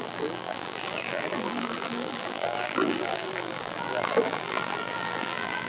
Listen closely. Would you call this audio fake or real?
fake